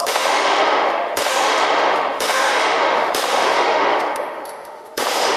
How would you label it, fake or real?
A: fake